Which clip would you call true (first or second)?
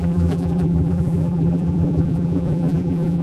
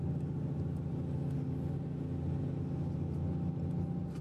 second